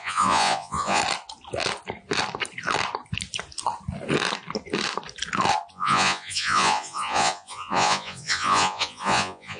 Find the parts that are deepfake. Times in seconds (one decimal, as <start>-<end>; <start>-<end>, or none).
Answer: 0.0-1.0; 5.7-9.6